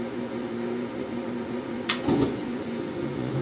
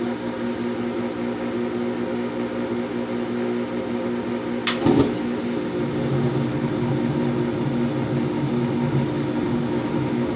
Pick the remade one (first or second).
first